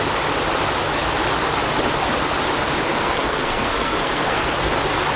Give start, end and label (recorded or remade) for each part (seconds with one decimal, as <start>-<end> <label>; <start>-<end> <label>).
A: 0.0-2.9 recorded; 2.9-4.5 remade; 4.5-5.2 recorded